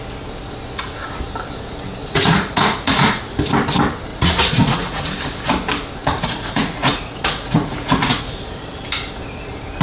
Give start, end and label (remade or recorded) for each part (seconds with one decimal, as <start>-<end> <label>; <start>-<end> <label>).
0.0-2.0 recorded; 2.0-3.2 remade; 3.2-4.1 recorded; 4.1-5.0 remade; 5.0-6.0 recorded; 6.0-8.4 remade; 8.4-9.8 recorded